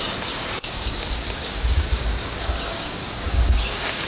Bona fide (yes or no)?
no